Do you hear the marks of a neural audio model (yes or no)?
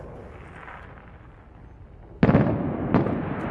no